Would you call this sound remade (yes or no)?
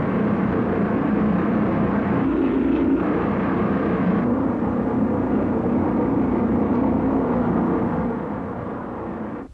no